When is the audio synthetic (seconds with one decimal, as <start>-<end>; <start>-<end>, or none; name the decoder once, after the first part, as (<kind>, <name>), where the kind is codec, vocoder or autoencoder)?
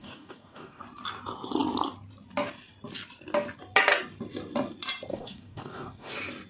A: 0.0-0.8 (codec, DAC); 5.1-6.1